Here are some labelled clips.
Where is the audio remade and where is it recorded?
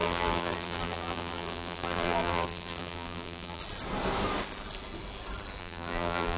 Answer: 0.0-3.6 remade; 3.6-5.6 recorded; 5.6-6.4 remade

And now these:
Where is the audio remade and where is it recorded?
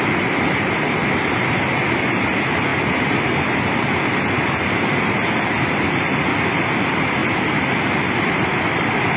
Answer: 0.0-1.0 recorded; 1.0-1.6 remade; 1.6-2.7 recorded; 2.7-3.7 remade; 3.7-9.2 recorded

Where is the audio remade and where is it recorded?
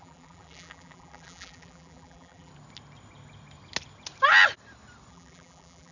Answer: 0.0-2.5 remade; 2.5-5.1 recorded; 5.1-5.9 remade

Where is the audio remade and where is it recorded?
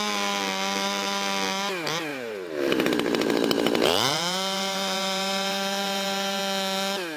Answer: 0.0-2.1 recorded; 2.1-6.4 remade; 6.4-7.2 recorded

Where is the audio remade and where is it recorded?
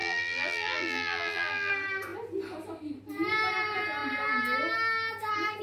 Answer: 0.0-1.7 remade; 1.7-5.6 recorded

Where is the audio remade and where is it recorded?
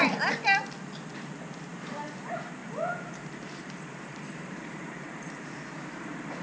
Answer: 0.0-2.6 recorded; 2.6-6.4 remade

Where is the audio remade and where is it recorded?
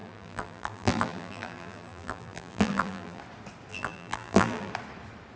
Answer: 0.0-3.2 remade; 3.2-3.7 recorded; 3.7-4.7 remade; 4.7-5.4 recorded